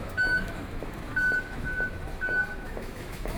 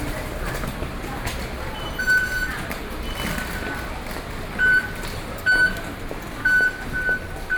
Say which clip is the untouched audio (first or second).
second